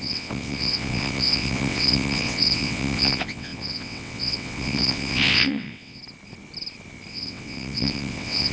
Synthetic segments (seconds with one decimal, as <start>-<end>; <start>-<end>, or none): 0.0-6.0; 7.1-8.5